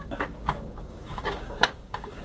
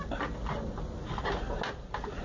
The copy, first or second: first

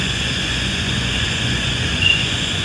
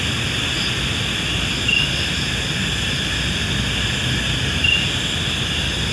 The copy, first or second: first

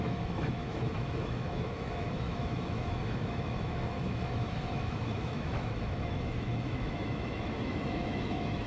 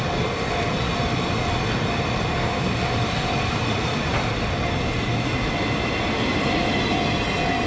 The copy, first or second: first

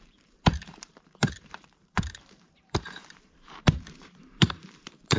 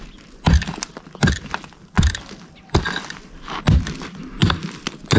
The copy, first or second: first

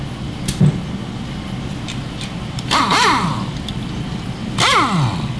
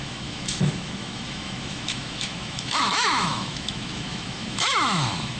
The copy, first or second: second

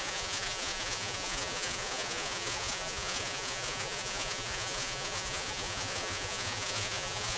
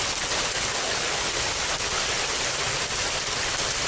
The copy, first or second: first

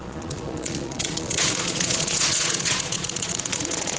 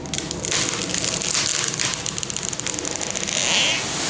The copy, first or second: first